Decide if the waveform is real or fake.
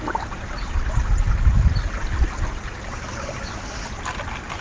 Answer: real